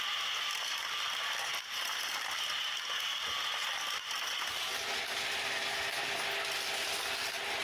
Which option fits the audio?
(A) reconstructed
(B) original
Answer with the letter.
B